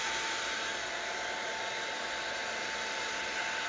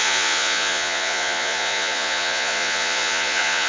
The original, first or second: first